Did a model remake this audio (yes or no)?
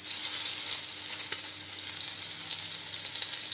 no